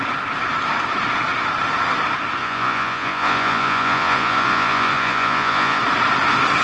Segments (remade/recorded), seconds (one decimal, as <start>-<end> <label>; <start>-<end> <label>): 0.0-2.4 recorded; 2.4-5.8 remade; 5.8-6.6 recorded